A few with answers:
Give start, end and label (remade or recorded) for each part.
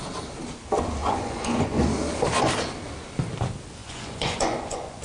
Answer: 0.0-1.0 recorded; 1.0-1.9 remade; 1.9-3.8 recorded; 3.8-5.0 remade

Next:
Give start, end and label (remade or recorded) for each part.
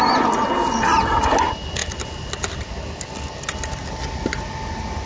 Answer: 0.0-5.1 recorded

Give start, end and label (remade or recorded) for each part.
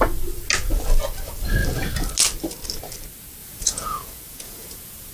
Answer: 0.0-3.4 recorded; 3.4-5.1 remade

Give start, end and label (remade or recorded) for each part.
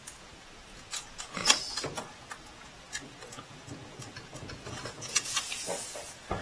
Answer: 0.0-6.4 remade